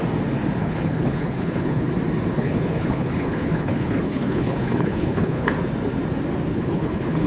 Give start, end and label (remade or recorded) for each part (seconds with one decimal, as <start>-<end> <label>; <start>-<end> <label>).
0.0-0.6 recorded; 0.6-1.9 remade; 1.9-2.3 recorded; 2.3-5.5 remade; 5.5-6.5 recorded; 6.5-7.3 remade